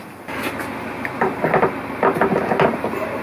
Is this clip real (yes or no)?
yes